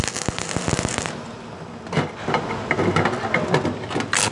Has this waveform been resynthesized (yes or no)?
no